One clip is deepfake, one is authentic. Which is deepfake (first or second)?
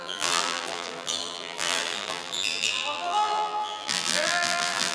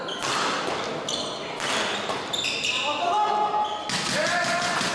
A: first